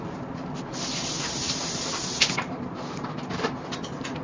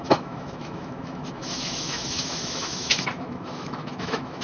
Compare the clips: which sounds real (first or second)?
first